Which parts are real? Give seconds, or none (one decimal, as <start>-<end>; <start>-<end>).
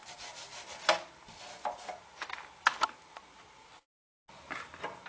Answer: 0.0-5.1